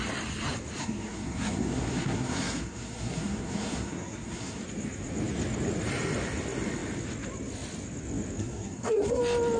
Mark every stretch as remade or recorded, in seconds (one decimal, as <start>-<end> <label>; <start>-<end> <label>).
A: 0.0-0.8 recorded; 0.8-4.6 remade; 4.6-8.4 recorded; 8.4-9.2 remade; 9.2-9.6 recorded